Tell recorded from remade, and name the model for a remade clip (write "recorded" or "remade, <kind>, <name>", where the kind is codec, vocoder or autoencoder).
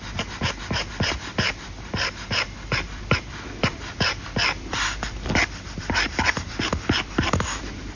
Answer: remade, vocoder, BigVGAN v2